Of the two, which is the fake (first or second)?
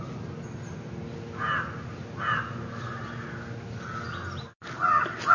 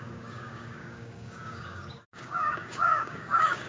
second